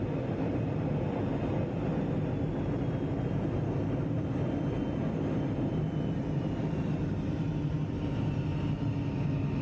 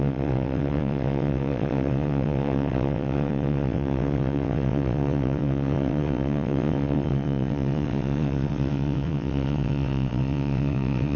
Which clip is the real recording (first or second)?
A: first